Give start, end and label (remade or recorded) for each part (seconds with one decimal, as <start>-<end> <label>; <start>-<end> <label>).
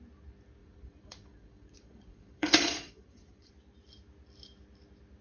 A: 0.0-0.6 recorded; 0.6-3.5 remade; 3.5-5.2 recorded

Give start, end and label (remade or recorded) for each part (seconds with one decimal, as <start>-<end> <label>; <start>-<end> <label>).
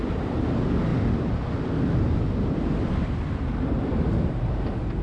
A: 0.0-5.0 recorded